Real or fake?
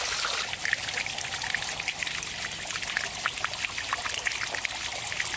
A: real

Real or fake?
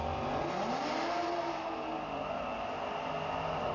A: real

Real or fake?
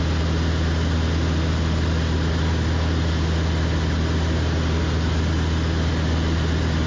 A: real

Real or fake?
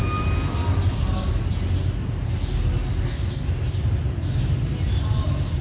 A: real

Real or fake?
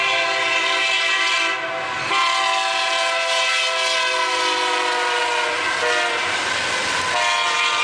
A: real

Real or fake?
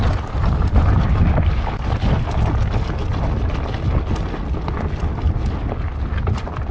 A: real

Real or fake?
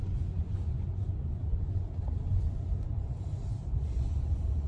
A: fake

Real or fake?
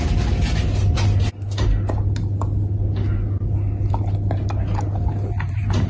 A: real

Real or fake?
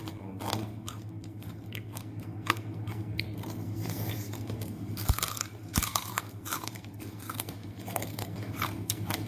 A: fake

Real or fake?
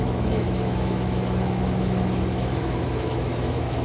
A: fake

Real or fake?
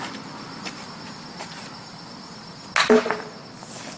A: real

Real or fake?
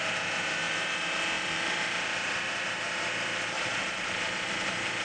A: fake